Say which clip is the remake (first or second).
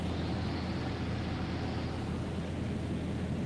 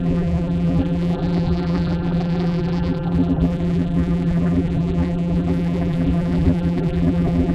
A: second